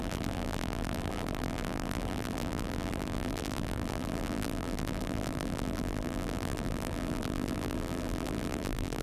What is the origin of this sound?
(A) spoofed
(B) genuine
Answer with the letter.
A